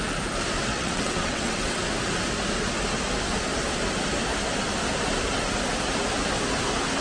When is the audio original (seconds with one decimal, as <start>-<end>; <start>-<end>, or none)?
0.0-0.7; 1.8-7.0